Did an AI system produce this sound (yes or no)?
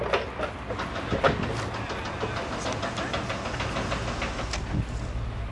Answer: no